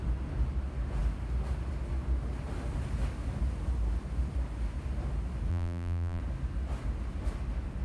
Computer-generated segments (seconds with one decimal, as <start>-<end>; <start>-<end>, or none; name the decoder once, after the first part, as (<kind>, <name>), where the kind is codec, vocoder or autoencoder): 5.5-6.2 (vocoder, BigVGAN v2)